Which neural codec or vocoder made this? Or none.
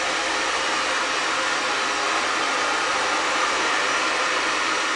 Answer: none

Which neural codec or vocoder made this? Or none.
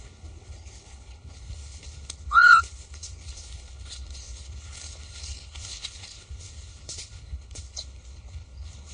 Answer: codec, HILCodec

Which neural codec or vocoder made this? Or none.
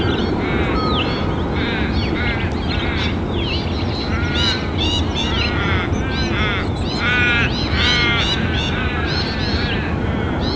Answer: none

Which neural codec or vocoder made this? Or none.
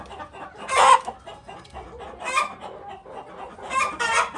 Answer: none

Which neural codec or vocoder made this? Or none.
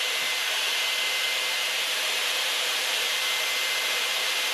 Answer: vocoder, BigVGAN v2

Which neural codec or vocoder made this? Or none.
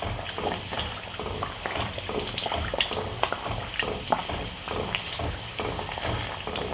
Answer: none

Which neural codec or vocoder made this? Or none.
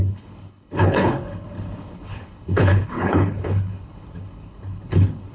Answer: codec, HILCodec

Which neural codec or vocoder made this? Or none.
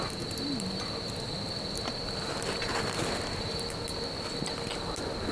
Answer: none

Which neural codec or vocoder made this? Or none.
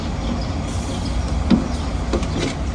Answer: none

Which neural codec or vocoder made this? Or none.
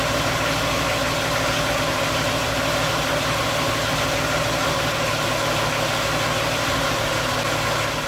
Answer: none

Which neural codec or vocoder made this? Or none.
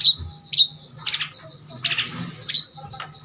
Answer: none